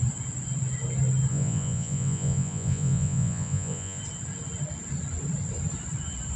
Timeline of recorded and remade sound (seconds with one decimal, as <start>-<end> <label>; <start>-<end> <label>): 0.0-1.3 recorded; 1.3-4.0 remade; 4.0-6.4 recorded